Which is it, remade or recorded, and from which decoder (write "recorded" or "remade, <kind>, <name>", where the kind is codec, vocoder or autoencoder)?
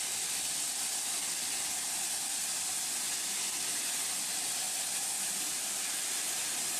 recorded